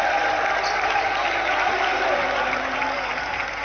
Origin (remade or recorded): recorded